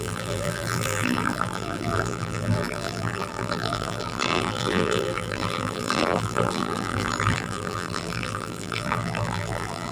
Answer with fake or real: fake